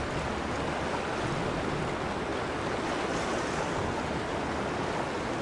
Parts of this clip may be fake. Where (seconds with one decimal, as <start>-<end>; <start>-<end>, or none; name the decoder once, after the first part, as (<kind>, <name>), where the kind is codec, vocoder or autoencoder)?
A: none